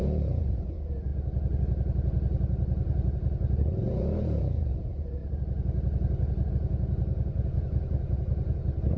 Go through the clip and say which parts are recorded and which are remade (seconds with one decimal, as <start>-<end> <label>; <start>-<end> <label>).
0.0-1.1 remade; 1.1-3.9 recorded; 3.9-5.2 remade; 5.2-6.5 recorded; 6.5-9.0 remade